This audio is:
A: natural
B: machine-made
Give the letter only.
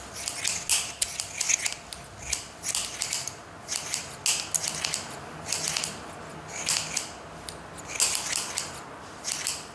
A